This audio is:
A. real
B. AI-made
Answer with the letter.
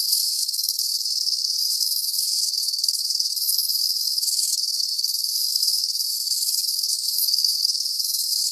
B